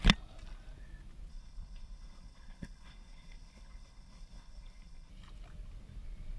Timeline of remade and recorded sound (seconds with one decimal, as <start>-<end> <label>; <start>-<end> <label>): 0.0-1.3 recorded; 1.3-5.1 remade; 5.1-6.4 recorded